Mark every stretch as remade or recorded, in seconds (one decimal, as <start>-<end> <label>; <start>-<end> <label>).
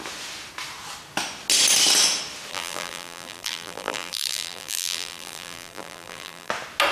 0.0-2.5 recorded; 2.5-6.5 remade; 6.5-6.9 recorded